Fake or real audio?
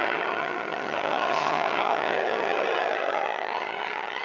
fake